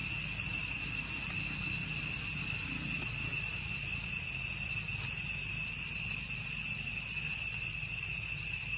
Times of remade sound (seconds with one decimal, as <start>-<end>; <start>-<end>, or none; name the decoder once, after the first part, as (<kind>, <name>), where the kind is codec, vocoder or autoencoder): 5.4-6.0 (vocoder, BigVGAN v2)